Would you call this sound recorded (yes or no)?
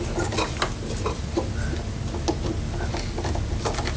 yes